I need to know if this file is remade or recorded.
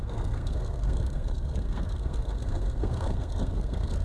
remade